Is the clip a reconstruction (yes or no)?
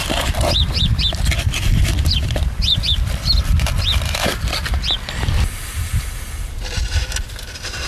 yes